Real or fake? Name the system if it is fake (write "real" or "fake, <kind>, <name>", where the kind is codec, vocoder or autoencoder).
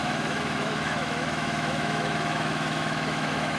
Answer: fake, autoencoder, DAC-VAE